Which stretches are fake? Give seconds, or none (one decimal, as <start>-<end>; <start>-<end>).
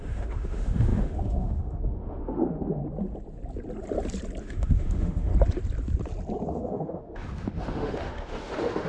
0.0-2.8; 4.4-5.3; 6.5-8.9